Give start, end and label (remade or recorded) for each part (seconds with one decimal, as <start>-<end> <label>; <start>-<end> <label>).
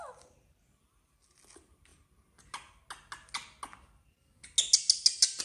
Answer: 0.0-5.4 recorded